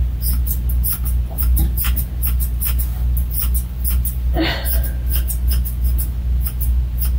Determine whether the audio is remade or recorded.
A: recorded